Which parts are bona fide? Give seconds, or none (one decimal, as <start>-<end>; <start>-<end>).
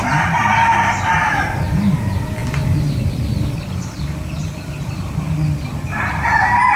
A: 0.0-6.8